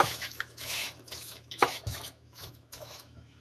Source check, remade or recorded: remade